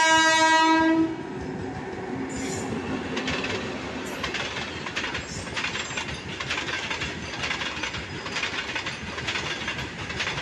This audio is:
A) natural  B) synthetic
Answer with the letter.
A